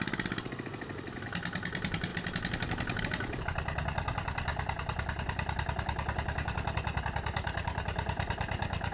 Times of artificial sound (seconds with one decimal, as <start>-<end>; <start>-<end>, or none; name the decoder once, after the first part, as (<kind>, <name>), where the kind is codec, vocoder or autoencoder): 0.0-2.1 (vocoder, BigVGAN v2); 3.0-8.9